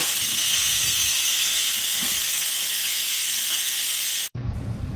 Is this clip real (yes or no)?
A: no